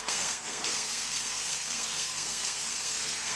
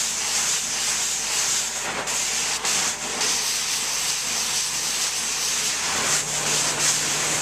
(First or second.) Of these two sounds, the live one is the second